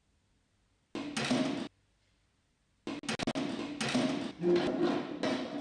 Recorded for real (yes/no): yes